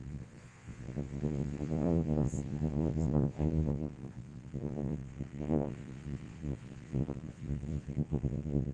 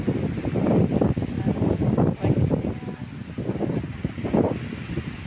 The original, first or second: second